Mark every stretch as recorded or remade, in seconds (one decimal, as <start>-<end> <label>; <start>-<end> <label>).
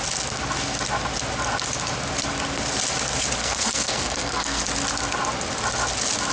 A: 0.0-3.4 recorded; 3.4-4.6 remade; 4.6-6.3 recorded